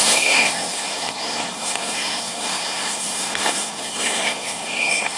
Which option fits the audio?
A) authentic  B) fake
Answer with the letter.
B